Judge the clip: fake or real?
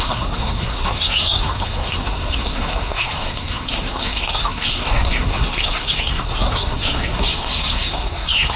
fake